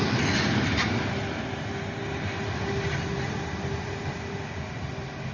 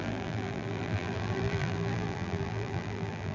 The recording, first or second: first